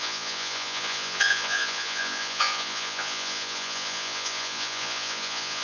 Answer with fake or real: fake